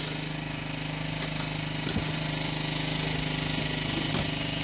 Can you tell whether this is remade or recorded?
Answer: recorded